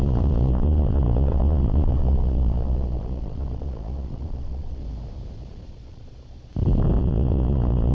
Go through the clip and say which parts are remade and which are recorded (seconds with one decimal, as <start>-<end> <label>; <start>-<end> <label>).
0.0-4.8 remade; 4.8-5.7 recorded; 5.7-6.5 remade; 6.5-7.0 recorded; 7.0-7.9 remade